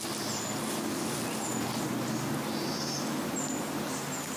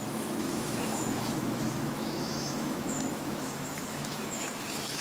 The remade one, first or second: second